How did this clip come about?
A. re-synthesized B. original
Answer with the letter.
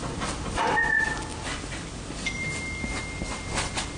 B